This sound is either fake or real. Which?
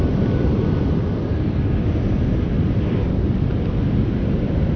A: real